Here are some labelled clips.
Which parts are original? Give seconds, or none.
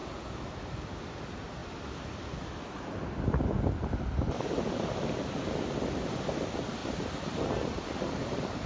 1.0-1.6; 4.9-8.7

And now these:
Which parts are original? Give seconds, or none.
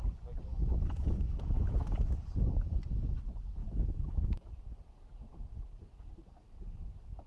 0.0-0.5; 2.2-3.6; 4.5-7.3